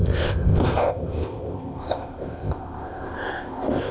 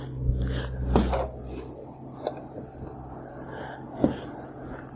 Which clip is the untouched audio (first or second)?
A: second